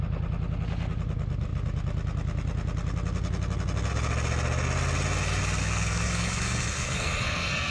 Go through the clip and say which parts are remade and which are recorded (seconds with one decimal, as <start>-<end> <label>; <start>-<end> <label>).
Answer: 0.0-5.6 recorded; 5.6-7.7 remade

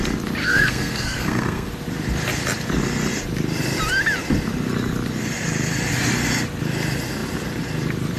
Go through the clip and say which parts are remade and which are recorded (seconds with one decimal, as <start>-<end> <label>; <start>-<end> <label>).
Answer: 0.0-0.4 recorded; 0.4-1.7 remade; 1.7-8.2 recorded